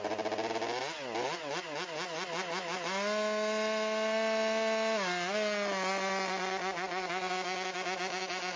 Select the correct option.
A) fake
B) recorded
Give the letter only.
B